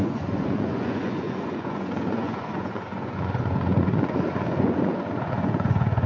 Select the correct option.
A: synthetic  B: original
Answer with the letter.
A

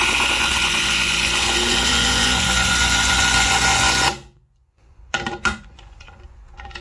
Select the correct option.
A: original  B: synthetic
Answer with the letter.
B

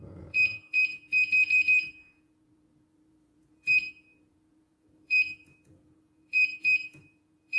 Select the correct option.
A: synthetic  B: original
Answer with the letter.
A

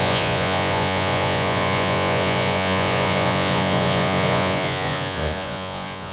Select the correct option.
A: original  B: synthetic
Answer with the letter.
B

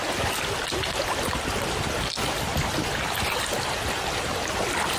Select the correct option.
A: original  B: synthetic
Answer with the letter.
A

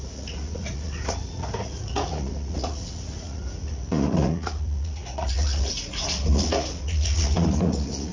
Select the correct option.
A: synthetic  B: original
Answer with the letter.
A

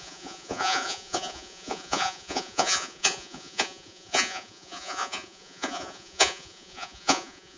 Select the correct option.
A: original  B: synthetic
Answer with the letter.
B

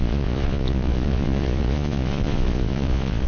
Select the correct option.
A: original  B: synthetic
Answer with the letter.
B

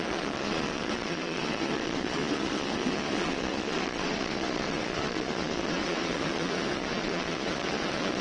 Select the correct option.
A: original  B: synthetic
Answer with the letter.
B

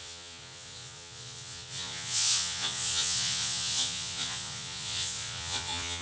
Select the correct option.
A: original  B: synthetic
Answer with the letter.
B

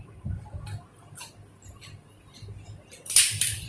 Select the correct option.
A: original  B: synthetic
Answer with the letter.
A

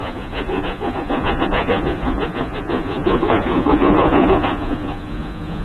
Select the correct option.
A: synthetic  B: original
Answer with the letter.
A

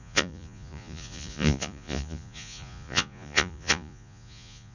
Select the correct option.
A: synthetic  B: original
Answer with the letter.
A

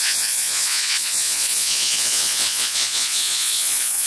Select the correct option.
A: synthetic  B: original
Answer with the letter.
A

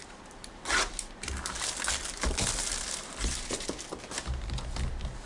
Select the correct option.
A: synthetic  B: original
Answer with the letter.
B